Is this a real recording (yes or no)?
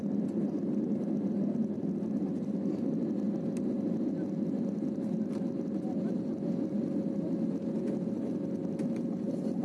yes